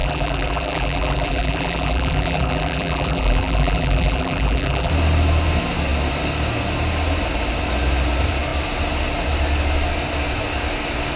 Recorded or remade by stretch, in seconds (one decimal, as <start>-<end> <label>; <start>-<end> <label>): 0.0-4.9 remade; 4.9-11.2 recorded